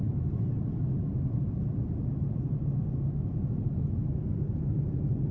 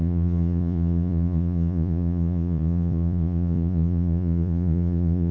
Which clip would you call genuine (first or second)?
first